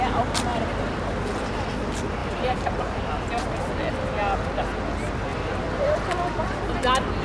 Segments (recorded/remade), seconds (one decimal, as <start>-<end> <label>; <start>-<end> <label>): 0.0-0.5 recorded; 0.5-1.8 remade; 1.8-2.2 recorded; 2.2-3.1 remade; 3.1-5.3 recorded; 5.3-5.9 remade; 5.9-7.2 recorded